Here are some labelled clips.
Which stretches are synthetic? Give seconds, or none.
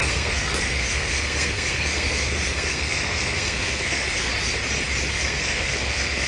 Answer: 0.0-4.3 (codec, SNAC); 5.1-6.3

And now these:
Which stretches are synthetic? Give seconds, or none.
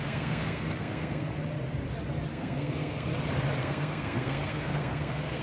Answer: 0.0-1.3 (codec, SNAC); 2.3-3.1; 3.6-5.4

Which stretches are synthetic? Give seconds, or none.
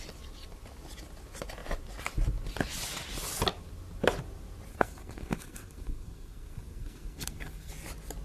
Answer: 4.7-7.7 (codec, SNAC)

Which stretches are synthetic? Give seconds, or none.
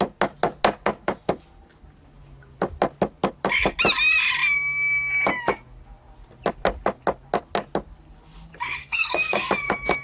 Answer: 8.8-9.5 (codec, SNAC)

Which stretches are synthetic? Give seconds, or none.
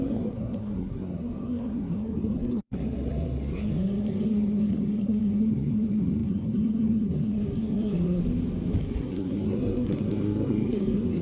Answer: 0.0-8.2 (codec, SNAC); 8.8-11.2